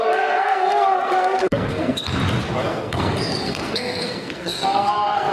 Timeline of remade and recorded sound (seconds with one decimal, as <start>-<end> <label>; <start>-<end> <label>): 0.0-2.1 remade; 2.1-2.6 recorded; 2.6-5.3 remade